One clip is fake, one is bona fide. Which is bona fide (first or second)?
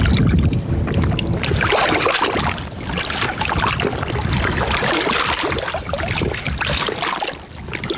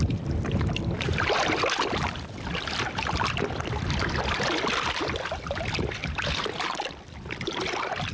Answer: first